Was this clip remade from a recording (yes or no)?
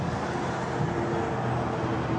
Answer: no